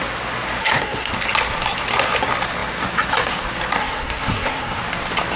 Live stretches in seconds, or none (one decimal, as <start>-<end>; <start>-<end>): 0.0-0.6; 1.1-3.8; 4.8-5.4